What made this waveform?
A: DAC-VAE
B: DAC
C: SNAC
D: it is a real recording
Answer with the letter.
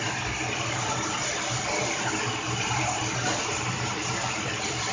D